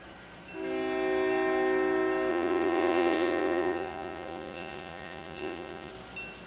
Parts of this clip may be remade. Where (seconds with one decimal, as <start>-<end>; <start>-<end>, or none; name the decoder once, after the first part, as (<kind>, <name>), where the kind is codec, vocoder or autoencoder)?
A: 2.3-5.9 (vocoder, Vocos)